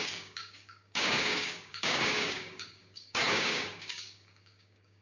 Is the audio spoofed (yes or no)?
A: yes